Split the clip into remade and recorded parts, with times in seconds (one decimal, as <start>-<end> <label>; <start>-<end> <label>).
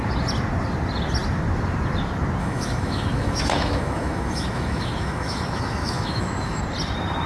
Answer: 0.0-2.4 recorded; 2.4-6.6 remade; 6.6-7.3 recorded